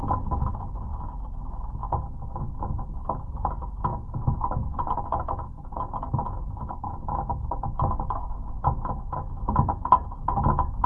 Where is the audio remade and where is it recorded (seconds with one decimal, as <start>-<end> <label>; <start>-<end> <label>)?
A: 0.0-3.9 recorded; 3.9-9.0 remade; 9.0-10.9 recorded